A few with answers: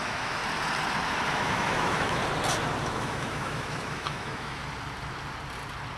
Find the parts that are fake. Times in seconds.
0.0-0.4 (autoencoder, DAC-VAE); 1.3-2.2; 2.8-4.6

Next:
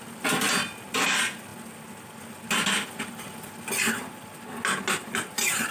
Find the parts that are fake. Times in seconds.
none

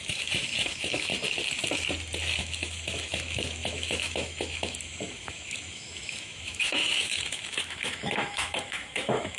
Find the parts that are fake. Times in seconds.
0.0-1.1 (autoencoder, DAC-VAE); 2.4-9.4

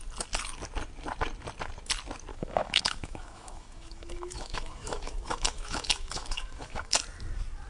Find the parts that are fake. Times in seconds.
2.3-6.9 (autoencoder, DAC-VAE)